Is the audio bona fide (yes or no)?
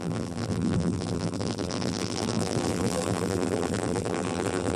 no